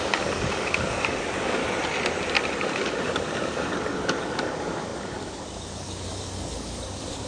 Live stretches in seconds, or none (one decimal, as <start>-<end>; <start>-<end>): 1.6-2.3